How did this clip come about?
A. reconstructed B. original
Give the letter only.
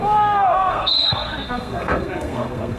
A